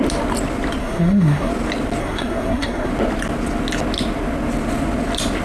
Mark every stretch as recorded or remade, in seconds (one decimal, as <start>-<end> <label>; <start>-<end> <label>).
0.0-0.8 recorded; 0.8-1.5 remade; 1.5-2.0 recorded; 2.0-2.9 remade; 2.9-5.4 recorded

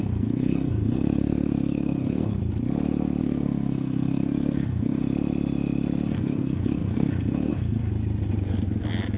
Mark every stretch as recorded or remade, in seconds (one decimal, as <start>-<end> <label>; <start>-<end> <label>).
0.0-2.4 remade; 2.4-3.2 recorded; 3.2-5.0 remade; 5.0-6.1 recorded; 6.1-7.9 remade; 7.9-9.2 recorded

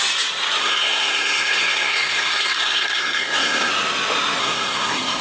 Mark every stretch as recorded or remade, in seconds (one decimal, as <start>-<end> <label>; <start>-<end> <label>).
0.0-0.6 recorded; 0.6-3.7 remade; 3.7-4.4 recorded; 4.4-5.2 remade

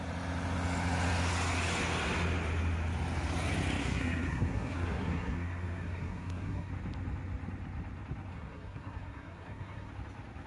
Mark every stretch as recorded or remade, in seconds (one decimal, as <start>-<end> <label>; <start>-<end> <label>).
0.0-3.8 recorded; 3.8-6.7 remade; 6.7-8.3 recorded; 8.3-9.9 remade; 9.9-10.5 recorded

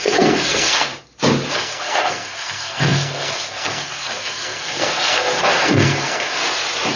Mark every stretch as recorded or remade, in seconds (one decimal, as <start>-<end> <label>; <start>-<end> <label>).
0.0-0.9 remade; 0.9-1.5 recorded; 1.5-6.4 remade; 6.4-7.0 recorded

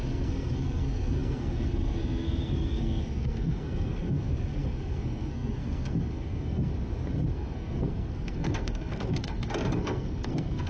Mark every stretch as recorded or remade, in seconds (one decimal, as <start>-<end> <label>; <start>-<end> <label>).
0.0-6.7 remade; 6.7-7.3 recorded; 7.3-10.7 remade